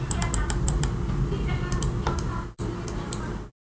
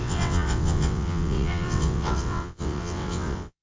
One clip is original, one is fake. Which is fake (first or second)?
second